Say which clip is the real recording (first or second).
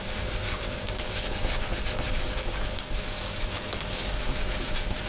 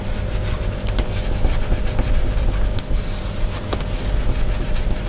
second